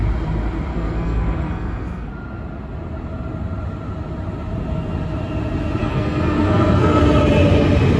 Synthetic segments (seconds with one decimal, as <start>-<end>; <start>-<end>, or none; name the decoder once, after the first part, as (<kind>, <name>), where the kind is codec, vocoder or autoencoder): 0.7-2.1 (codec, SNAC); 5.8-7.0